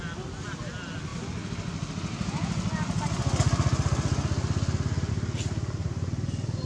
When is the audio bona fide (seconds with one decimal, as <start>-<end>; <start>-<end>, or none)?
0.0-6.7